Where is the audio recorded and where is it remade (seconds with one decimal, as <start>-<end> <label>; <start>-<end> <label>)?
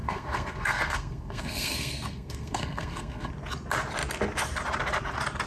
0.0-3.3 remade; 3.3-5.5 recorded